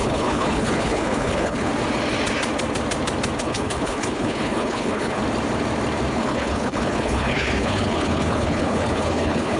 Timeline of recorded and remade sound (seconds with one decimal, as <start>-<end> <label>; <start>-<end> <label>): 0.0-1.7 remade; 1.7-3.4 recorded; 3.4-5.2 remade; 5.2-6.1 recorded; 6.1-9.6 remade